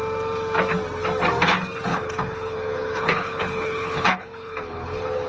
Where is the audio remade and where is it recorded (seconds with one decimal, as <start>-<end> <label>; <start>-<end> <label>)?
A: 0.0-1.9 recorded; 1.9-5.3 remade